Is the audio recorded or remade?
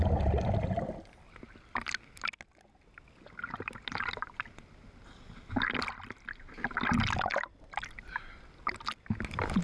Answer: recorded